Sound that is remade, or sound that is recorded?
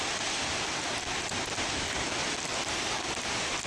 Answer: recorded